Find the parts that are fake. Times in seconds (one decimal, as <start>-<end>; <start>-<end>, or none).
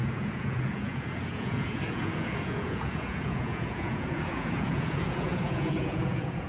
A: 0.0-6.5